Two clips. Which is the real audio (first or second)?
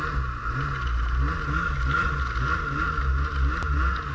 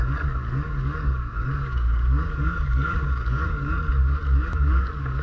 first